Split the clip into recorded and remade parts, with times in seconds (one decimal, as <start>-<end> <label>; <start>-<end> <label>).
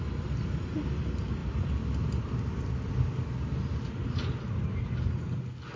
0.0-5.8 recorded